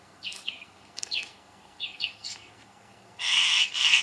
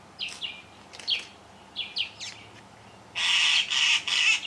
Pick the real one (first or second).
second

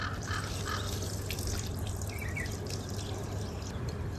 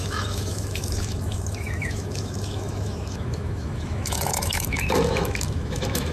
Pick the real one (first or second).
first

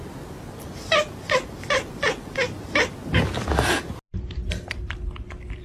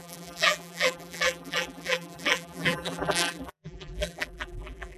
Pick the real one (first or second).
first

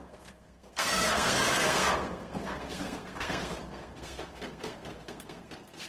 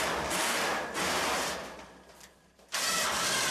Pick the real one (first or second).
second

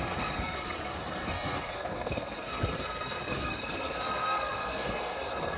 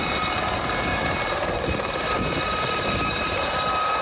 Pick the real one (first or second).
second